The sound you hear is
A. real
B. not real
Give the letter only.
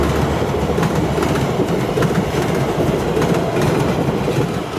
A